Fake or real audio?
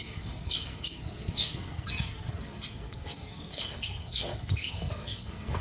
fake